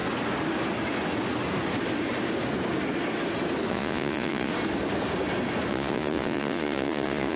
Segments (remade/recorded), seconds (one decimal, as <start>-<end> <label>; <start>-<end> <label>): 0.0-3.7 recorded; 3.7-4.5 remade; 4.5-5.7 recorded; 5.7-7.4 remade